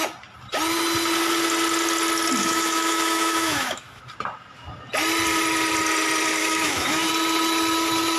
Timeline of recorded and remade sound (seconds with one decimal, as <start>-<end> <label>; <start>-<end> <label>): 0.0-2.4 recorded; 2.4-4.0 remade; 4.0-6.4 recorded; 6.4-7.1 remade; 7.1-8.2 recorded